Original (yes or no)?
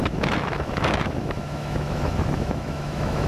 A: no